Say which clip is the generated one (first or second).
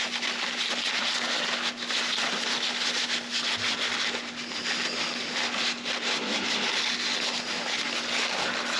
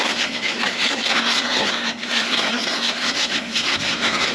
second